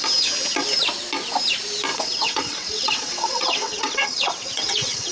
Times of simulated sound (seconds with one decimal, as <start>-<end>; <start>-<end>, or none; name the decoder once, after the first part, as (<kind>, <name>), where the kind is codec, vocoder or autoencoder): 1.9-5.1 (vocoder, WaveNeXt)